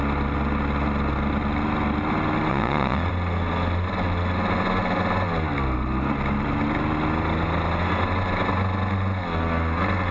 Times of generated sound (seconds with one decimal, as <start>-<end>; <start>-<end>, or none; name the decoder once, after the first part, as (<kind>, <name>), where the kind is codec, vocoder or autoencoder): 2.5-3.1 (vocoder, Vocos)